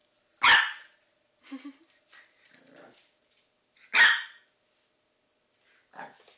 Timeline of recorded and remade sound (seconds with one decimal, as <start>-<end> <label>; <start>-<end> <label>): 0.0-6.4 recorded